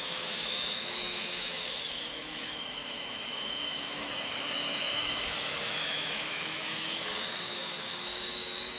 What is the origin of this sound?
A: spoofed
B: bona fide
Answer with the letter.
A